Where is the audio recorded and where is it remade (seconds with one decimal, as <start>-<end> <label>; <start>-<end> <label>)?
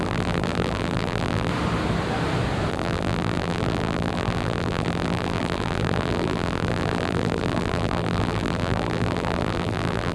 0.0-1.5 remade; 1.5-2.7 recorded; 2.7-10.1 remade